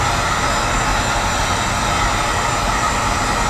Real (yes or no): yes